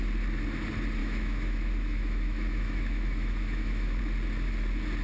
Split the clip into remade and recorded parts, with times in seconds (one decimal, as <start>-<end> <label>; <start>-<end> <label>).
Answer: 0.0-1.0 recorded; 1.0-4.0 remade; 4.0-5.0 recorded